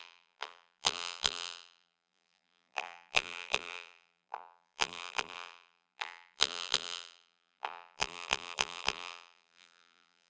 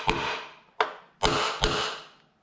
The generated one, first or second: first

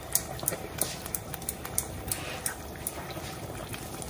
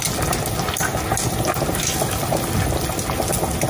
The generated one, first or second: first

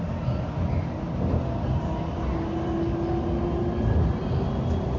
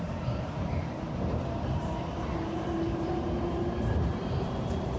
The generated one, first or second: second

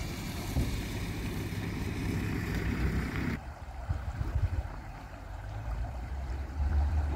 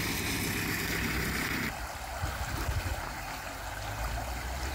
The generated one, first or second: first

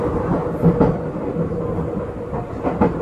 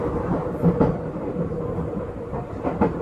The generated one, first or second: second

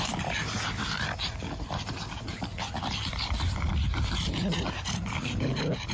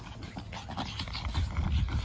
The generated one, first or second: first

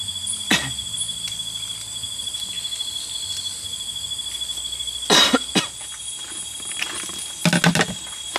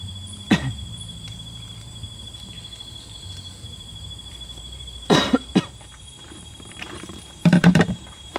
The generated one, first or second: second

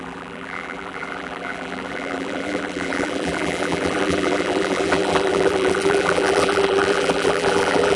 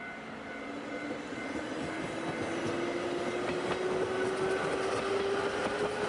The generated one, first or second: first